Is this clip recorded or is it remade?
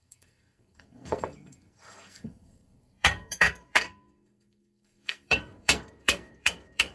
remade